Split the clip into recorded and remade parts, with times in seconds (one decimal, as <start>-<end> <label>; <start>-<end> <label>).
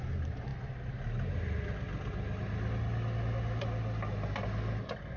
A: 0.0-5.2 recorded